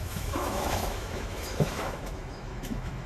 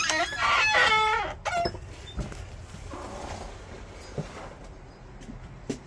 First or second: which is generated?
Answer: first